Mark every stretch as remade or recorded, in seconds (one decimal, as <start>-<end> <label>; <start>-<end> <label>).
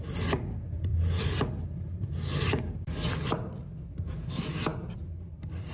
0.0-0.9 recorded; 0.9-4.3 remade; 4.3-4.7 recorded; 4.7-5.7 remade